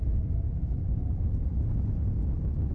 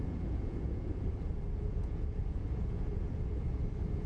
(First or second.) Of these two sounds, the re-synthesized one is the second